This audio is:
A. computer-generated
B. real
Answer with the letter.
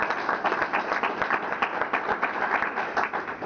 B